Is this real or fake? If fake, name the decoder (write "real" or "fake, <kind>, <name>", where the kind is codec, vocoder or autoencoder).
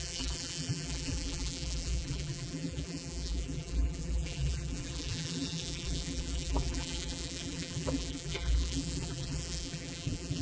fake, vocoder, BigVGAN v2